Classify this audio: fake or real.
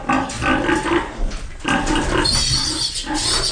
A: real